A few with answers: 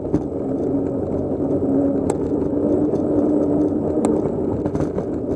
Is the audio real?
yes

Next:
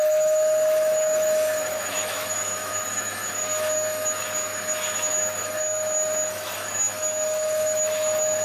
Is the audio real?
no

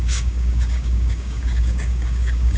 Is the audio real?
no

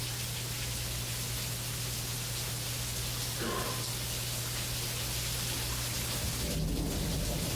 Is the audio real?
yes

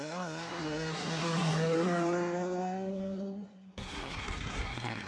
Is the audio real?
no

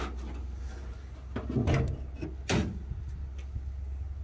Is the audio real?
yes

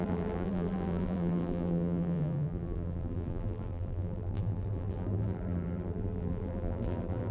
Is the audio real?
no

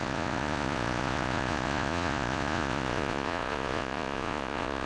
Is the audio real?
no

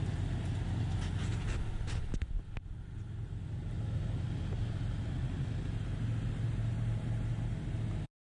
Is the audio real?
yes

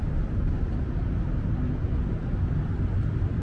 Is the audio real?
yes